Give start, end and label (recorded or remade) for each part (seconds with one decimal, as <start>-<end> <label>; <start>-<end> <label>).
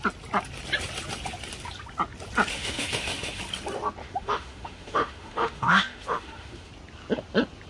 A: 0.0-2.5 recorded; 2.5-3.4 remade; 3.4-4.0 recorded; 4.0-6.7 remade; 6.7-7.7 recorded